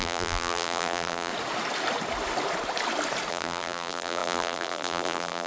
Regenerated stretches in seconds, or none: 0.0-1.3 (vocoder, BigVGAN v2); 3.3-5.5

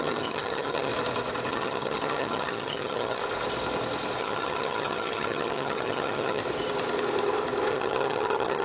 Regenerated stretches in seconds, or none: 0.0-0.9 (vocoder, HiFi-GAN); 1.5-3.2; 4.2-6.4; 7.7-8.6

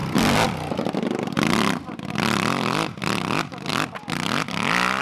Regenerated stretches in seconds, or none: none

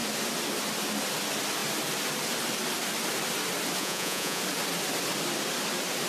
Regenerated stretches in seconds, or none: 3.8-4.4 (vocoder, Vocos)

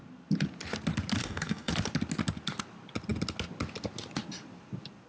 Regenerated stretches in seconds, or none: 1.2-1.7 (codec, DAC)

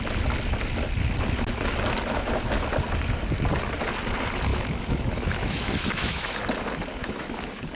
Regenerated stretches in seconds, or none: 4.5-6.4 (autoencoder, DAC-VAE); 7.0-7.7

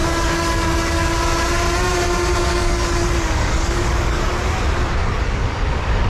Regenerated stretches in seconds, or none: 0.0-1.1 (codec, DAC); 2.5-4.3; 5.0-6.1

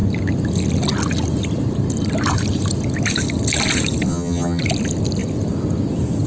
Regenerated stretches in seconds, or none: 4.1-4.6 (vocoder, HiFi-GAN)